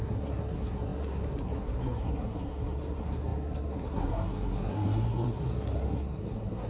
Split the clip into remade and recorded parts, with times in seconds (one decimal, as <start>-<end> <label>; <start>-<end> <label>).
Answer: 0.0-6.7 remade